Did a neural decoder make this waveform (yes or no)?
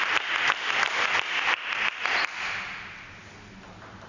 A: no